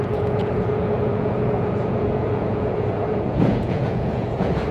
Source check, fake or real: fake